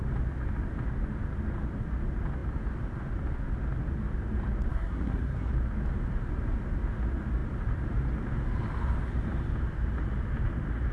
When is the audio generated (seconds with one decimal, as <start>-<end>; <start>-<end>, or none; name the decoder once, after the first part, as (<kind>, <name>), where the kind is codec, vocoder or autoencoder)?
4.7-5.5 (codec, SNAC)